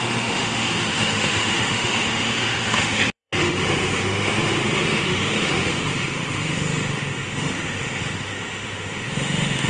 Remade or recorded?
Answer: remade